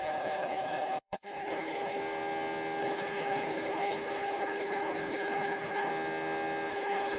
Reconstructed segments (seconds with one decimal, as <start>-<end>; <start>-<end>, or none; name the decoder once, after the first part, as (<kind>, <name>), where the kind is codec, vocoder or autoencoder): 0.0-2.0 (codec, HILCodec); 2.8-5.9; 6.7-7.2